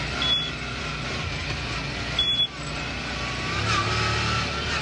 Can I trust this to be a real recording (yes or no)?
yes